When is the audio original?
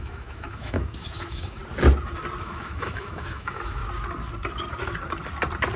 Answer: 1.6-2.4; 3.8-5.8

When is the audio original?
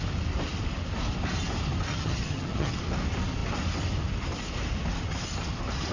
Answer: 0.0-1.9; 2.8-5.9